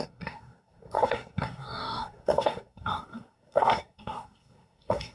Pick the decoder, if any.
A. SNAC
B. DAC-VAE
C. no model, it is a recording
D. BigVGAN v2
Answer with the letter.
A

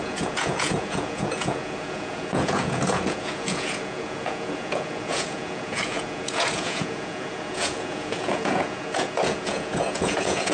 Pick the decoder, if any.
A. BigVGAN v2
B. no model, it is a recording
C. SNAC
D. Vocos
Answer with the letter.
D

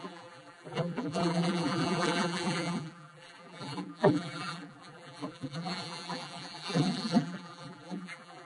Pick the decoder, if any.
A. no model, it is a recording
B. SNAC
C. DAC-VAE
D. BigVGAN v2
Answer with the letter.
D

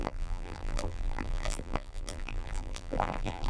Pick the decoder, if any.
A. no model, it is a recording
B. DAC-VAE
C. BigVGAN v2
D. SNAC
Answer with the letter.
C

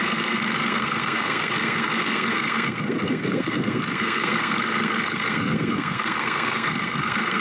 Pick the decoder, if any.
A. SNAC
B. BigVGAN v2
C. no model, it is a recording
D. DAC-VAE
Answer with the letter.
A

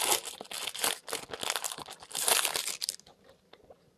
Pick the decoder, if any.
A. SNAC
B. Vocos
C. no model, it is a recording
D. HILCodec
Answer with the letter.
C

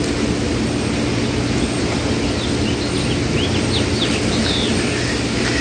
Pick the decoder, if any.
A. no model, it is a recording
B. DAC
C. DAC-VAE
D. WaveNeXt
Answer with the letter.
A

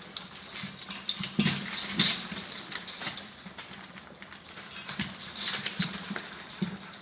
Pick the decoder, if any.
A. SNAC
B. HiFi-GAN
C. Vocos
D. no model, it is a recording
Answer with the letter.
D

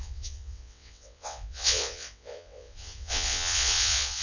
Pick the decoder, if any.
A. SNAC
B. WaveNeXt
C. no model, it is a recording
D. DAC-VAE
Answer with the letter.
B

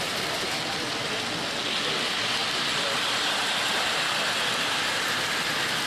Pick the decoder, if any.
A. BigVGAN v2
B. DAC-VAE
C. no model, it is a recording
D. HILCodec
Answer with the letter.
C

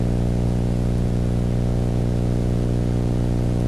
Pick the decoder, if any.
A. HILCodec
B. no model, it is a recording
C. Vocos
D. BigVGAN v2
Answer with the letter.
C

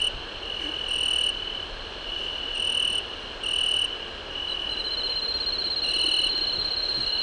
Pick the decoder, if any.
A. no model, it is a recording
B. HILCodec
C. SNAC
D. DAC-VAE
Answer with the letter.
A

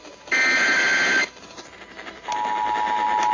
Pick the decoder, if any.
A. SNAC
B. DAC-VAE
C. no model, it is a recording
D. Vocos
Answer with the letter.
C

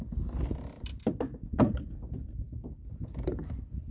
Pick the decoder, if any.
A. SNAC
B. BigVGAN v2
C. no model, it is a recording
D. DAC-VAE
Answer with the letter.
C